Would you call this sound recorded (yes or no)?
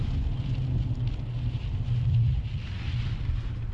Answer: yes